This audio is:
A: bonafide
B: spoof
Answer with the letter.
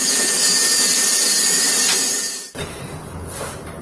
A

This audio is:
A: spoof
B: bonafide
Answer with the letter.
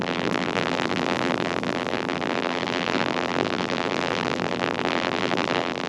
A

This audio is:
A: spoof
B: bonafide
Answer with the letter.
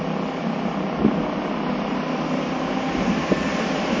B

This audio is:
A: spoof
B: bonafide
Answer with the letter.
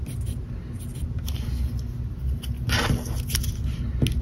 B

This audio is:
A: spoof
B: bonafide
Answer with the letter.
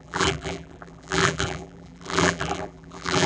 A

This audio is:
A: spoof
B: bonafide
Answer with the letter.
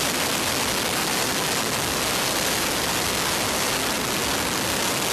B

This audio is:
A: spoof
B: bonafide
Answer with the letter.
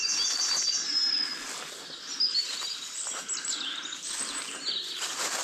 B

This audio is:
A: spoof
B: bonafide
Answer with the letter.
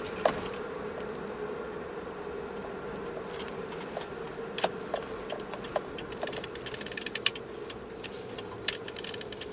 A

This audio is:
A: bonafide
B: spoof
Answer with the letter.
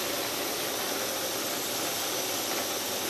A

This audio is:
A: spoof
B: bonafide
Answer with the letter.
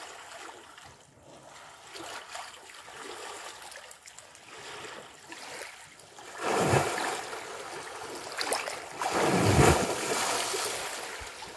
B